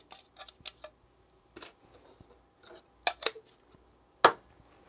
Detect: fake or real real